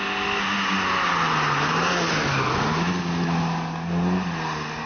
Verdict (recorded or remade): recorded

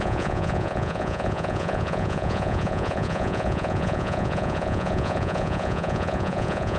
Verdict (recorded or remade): remade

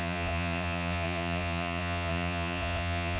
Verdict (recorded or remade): remade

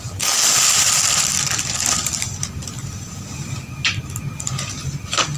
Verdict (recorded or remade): recorded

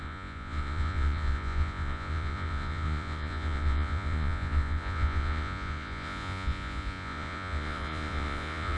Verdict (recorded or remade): remade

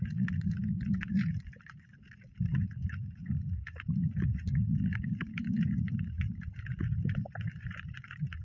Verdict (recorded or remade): remade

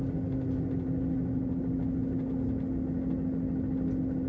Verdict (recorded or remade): recorded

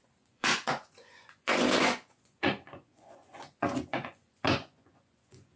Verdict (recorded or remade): remade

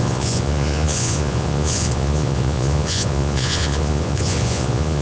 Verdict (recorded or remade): remade